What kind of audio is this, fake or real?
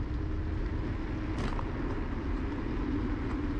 real